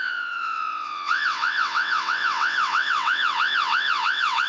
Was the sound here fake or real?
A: fake